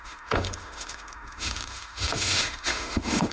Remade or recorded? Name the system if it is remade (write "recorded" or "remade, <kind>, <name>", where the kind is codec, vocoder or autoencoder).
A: remade, autoencoder, DAC-VAE